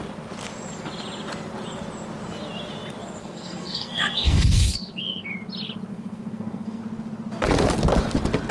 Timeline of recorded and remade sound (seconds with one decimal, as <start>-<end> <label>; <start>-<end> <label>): 0.0-3.2 recorded; 3.2-5.3 remade; 5.3-5.9 recorded; 5.9-6.8 remade; 6.8-8.5 recorded